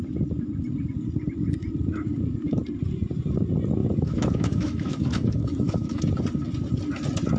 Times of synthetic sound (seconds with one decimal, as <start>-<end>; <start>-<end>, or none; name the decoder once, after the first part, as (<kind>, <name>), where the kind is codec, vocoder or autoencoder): 3.8-6.0 (autoencoder, DAC-VAE)